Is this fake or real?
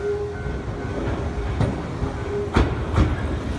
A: real